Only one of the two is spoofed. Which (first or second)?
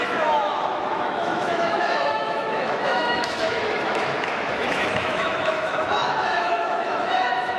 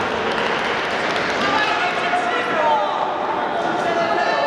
first